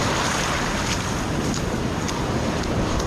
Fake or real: real